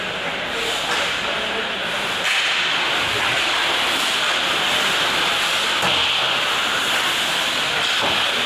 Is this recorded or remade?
recorded